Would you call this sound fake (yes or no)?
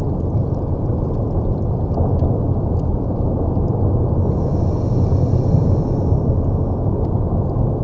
no